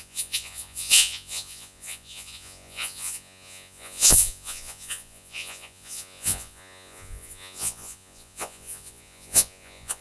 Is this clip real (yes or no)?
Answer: no